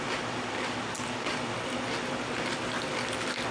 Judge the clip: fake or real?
real